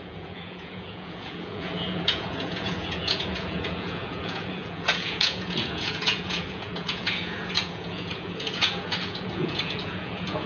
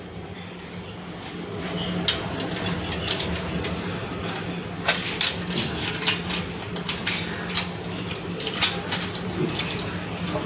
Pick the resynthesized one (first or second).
first